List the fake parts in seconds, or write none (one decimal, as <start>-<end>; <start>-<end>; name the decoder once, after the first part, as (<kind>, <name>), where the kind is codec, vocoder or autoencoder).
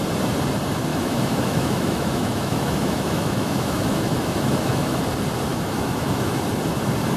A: 0.9-5.0 (autoencoder, DAC-VAE); 5.5-6.4